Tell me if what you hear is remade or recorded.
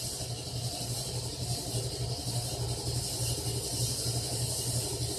recorded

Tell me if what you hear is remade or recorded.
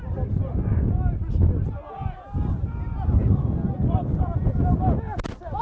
recorded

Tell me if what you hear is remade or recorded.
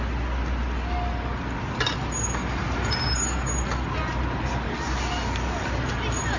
recorded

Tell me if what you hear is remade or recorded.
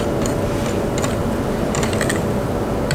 remade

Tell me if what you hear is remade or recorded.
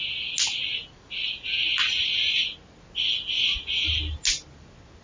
recorded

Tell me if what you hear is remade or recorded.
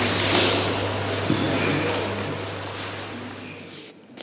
recorded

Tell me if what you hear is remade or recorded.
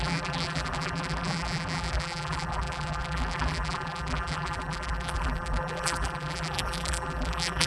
remade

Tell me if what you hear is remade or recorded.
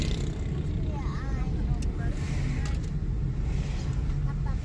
recorded